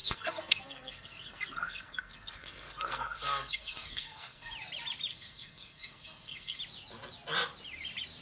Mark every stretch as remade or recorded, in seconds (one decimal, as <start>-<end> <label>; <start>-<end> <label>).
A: 0.0-4.5 remade; 4.5-5.1 recorded; 5.1-6.6 remade; 6.6-8.2 recorded